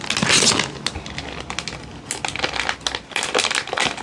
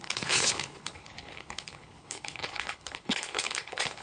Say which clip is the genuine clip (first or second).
first